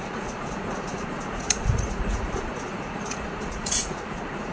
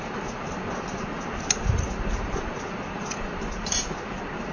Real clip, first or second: second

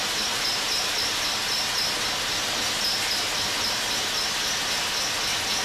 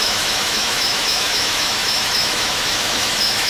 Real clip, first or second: first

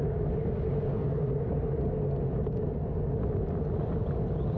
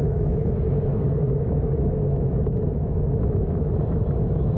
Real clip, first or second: first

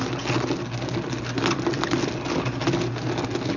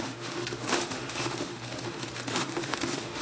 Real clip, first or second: first